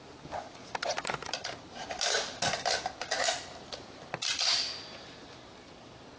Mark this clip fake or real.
real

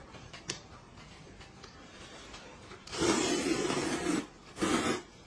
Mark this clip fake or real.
fake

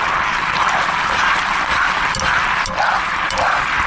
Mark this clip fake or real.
real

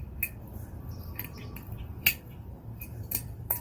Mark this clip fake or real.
fake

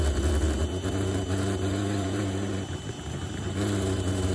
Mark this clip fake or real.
fake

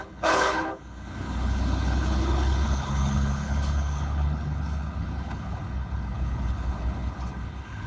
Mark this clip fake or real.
fake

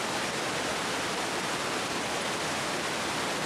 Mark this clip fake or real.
real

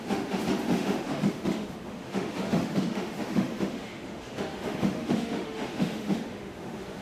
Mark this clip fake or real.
fake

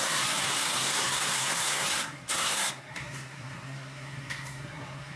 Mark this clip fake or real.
fake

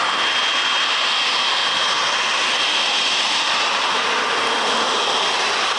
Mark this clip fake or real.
real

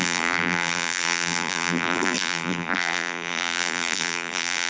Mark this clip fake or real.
fake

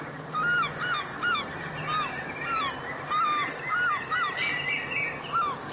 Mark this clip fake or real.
real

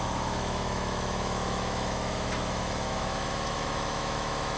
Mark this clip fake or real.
fake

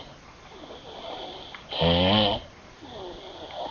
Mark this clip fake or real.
real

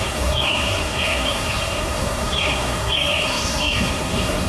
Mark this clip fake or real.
fake